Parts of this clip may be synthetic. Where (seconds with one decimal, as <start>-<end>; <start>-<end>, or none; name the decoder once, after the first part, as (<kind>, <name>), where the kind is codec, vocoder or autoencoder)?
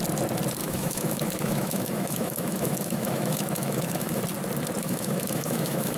0.6-4.2 (autoencoder, DAC-VAE); 4.8-6.0